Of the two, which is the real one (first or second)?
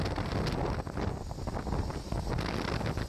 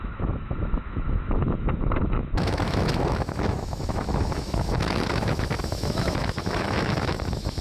first